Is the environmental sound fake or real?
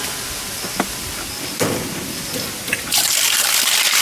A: real